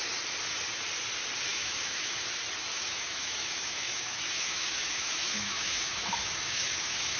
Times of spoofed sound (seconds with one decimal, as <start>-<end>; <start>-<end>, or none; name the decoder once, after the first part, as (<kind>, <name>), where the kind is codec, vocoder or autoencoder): 1.5-2.2 (autoencoder, DAC-VAE); 2.7-7.2